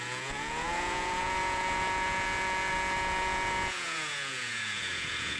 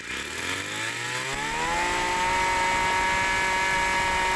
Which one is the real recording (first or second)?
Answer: second